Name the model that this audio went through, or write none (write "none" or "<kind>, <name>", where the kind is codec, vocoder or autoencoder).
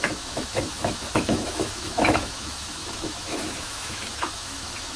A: autoencoder, DAC-VAE